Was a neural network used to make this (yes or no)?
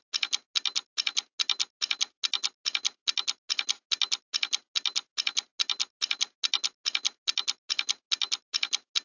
no